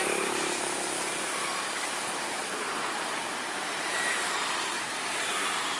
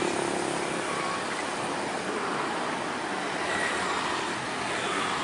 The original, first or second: second